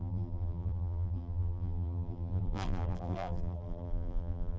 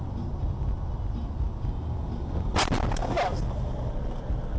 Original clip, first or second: second